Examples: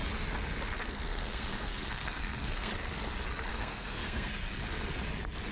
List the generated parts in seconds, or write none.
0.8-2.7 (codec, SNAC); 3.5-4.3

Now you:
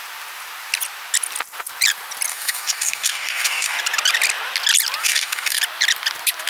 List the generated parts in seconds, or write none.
2.3-3.8 (codec, DAC); 5.0-5.6